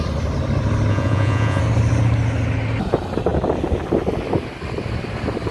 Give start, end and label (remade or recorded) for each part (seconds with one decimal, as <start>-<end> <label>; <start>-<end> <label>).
0.0-0.9 recorded; 0.9-1.6 remade; 1.6-5.5 recorded